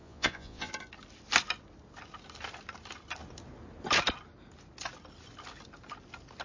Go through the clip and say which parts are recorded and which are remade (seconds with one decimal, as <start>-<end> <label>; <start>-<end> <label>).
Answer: 0.0-0.7 remade; 0.7-6.4 recorded

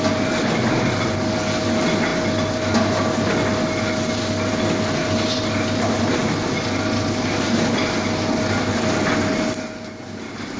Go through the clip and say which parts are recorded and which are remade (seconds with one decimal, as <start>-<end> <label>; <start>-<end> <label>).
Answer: 0.0-10.6 recorded

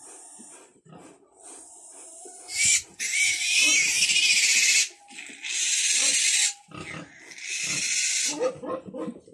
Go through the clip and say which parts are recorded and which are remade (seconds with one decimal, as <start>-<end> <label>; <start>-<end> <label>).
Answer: 0.0-9.3 recorded

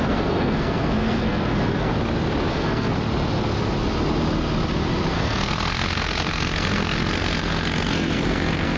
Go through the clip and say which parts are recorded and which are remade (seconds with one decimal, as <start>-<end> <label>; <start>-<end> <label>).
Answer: 0.0-1.9 remade; 1.9-2.5 recorded; 2.5-2.9 remade; 2.9-5.1 recorded; 5.1-8.8 remade

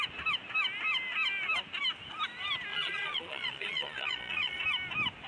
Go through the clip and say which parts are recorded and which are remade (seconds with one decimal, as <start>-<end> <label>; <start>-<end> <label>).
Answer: 0.0-2.7 recorded; 2.7-4.6 remade; 4.6-5.3 recorded